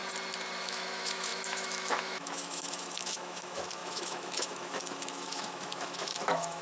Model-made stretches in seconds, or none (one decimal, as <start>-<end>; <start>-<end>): 0.6-6.6